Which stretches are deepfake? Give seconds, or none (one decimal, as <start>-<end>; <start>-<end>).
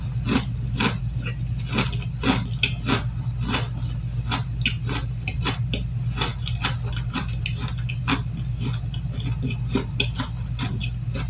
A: none